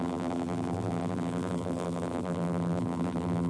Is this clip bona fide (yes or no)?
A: no